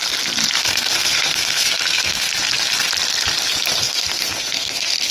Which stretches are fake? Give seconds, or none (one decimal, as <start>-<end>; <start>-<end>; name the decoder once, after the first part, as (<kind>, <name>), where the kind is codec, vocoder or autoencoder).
0.6-2.3 (codec, SNAC); 3.8-5.1